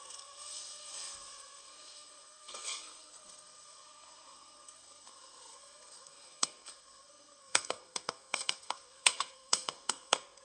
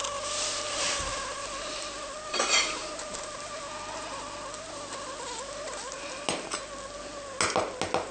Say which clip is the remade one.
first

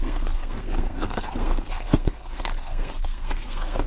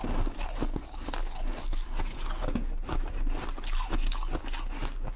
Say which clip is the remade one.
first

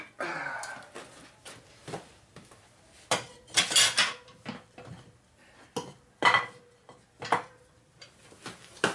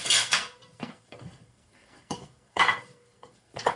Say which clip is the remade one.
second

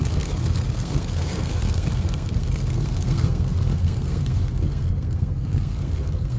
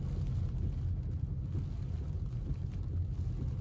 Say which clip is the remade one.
first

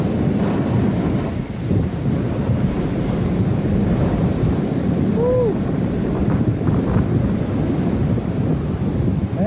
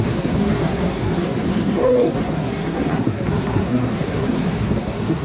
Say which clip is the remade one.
second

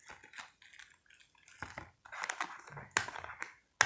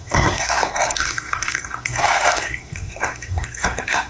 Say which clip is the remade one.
second